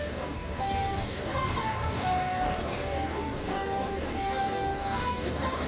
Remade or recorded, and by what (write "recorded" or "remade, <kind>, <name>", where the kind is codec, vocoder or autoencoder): remade, codec, DAC